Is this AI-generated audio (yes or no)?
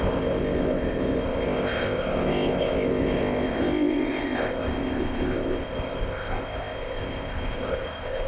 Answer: yes